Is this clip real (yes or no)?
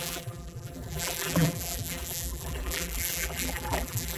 no